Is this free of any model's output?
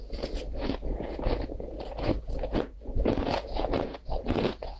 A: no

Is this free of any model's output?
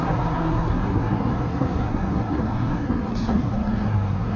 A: no